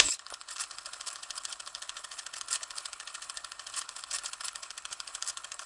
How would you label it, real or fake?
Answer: fake